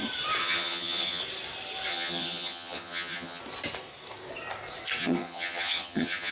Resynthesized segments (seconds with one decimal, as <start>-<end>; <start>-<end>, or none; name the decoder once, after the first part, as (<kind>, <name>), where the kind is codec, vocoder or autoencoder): 0.4-1.2 (vocoder, HiFi-GAN); 1.9-3.4; 5.0-6.3